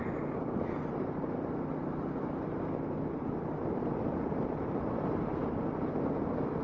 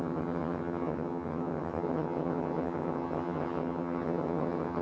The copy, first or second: second